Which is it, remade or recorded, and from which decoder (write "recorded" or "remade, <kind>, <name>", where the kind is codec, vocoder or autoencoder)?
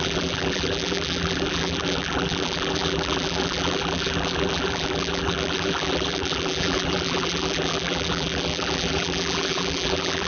remade, vocoder, BigVGAN v2